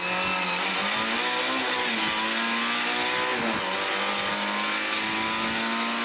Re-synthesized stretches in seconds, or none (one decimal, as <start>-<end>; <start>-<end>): none